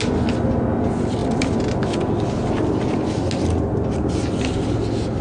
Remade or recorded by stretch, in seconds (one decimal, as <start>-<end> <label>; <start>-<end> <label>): 0.0-5.2 recorded